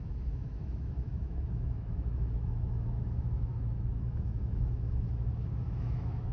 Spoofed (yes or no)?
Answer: yes